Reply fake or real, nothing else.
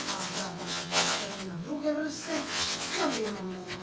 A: fake